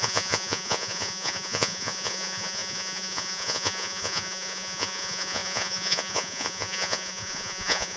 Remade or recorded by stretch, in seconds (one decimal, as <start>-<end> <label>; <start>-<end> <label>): 0.0-8.0 remade